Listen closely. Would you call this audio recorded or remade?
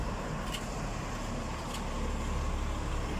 recorded